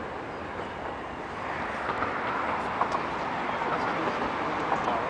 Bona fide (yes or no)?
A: yes